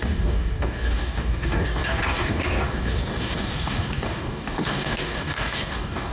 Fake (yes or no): yes